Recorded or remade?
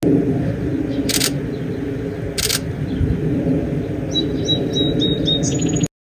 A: recorded